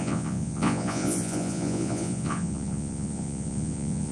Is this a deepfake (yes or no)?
yes